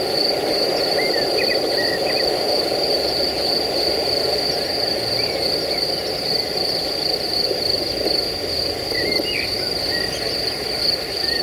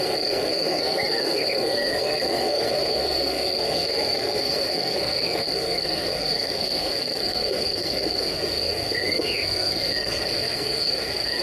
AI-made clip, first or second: second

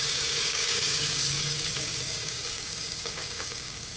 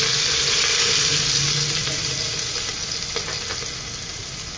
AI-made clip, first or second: first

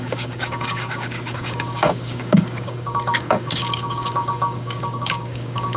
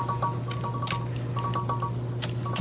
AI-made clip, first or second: first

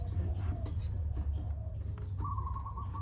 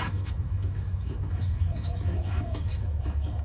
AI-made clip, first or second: second